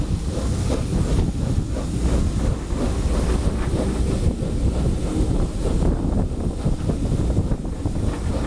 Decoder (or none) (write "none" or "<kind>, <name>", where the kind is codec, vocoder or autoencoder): none